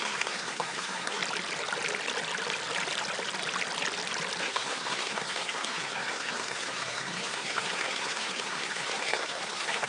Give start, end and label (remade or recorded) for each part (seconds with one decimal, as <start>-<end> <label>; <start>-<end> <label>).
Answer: 0.0-1.2 remade; 1.2-4.4 recorded; 4.4-9.9 remade